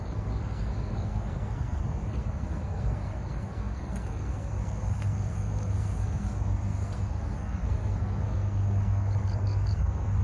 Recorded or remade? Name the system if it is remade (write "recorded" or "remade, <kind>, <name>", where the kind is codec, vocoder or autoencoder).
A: remade, codec, SNAC